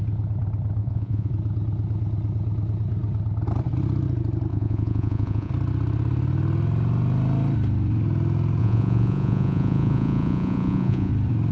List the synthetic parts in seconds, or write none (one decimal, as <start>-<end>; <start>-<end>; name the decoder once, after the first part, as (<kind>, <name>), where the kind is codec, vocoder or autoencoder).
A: 0.8-1.3 (vocoder, Vocos); 4.5-5.5; 8.6-11.1